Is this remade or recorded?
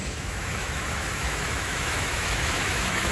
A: remade